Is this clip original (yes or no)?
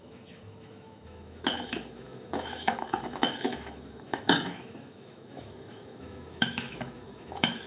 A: no